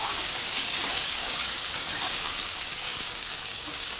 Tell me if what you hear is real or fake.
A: fake